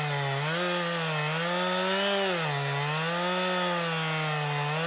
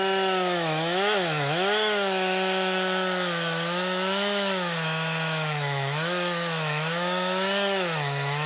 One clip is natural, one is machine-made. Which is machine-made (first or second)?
second